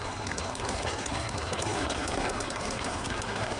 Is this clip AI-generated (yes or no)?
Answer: yes